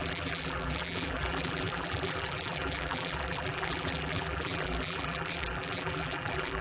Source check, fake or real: fake